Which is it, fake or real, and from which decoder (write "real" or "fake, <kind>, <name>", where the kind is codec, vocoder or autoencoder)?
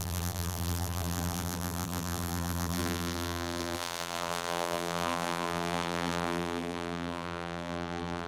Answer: fake, vocoder, BigVGAN v2